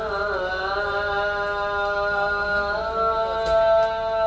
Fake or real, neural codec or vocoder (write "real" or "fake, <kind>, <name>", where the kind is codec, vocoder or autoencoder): real